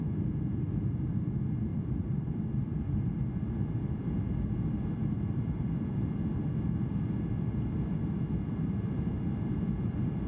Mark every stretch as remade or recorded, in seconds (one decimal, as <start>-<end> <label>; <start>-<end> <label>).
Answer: 0.0-1.7 recorded; 1.7-5.6 remade; 5.6-10.3 recorded

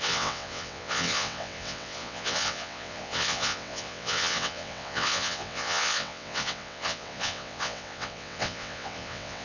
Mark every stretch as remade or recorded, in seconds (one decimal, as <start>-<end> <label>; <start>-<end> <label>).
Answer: 0.0-9.4 remade

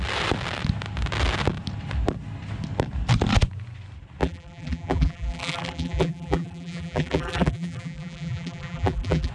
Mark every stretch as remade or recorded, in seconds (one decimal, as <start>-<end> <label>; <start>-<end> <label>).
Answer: 0.0-4.2 recorded; 4.2-9.3 remade

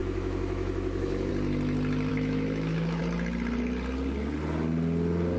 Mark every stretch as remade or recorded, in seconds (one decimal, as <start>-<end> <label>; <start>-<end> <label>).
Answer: 0.0-1.3 remade; 1.3-2.1 recorded; 2.1-3.0 remade; 3.0-5.4 recorded

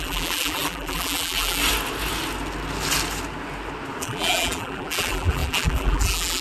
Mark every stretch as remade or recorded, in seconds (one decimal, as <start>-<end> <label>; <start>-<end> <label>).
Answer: 0.0-1.6 remade; 1.6-4.0 recorded; 4.0-6.4 remade

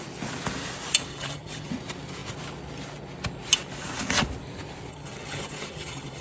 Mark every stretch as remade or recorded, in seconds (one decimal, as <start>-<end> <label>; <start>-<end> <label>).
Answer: 0.0-1.1 recorded; 1.1-1.7 remade; 1.7-4.9 recorded; 4.9-6.2 remade